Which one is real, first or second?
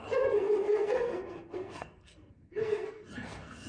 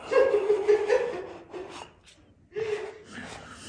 second